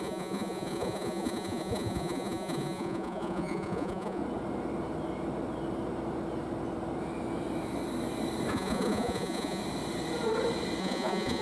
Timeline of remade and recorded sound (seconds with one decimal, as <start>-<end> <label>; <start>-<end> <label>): 0.0-4.2 remade; 4.2-8.5 recorded; 8.5-9.6 remade; 9.6-10.8 recorded; 10.8-11.4 remade